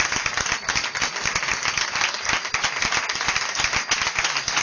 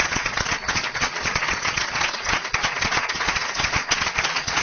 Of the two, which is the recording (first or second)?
first